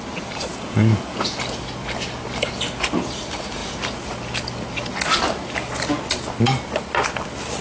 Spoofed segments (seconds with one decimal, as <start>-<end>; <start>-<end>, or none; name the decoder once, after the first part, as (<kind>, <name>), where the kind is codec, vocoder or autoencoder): 0.5-1.4 (vocoder, Vocos)